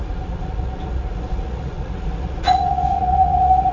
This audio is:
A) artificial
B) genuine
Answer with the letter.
A